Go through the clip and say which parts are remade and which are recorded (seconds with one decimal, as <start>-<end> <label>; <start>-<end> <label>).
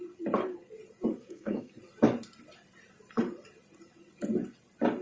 0.0-1.1 recorded; 1.1-1.8 remade; 1.8-5.0 recorded